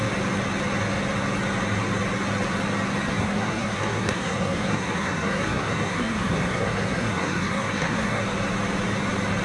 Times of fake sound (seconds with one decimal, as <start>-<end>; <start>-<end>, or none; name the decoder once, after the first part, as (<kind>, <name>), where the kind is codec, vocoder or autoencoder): 3.2-8.2 (codec, SNAC)